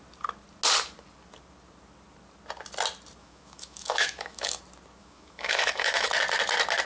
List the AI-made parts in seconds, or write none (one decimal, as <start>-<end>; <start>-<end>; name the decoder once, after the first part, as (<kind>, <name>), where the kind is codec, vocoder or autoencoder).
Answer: 3.2-4.6 (autoencoder, DAC-VAE); 5.0-6.1